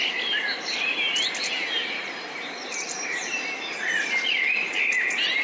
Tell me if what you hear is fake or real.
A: real